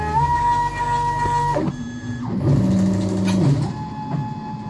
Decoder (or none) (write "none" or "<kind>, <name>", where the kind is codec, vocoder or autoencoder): none